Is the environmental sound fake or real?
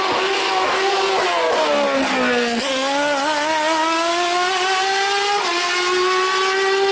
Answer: real